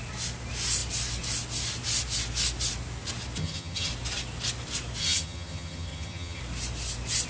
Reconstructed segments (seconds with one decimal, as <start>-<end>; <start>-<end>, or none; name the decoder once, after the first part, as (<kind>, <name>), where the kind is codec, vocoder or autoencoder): 3.4-3.9 (vocoder, HiFi-GAN); 5.0-6.4